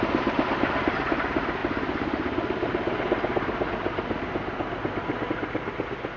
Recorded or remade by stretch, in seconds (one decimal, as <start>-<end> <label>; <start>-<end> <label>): 0.0-6.2 recorded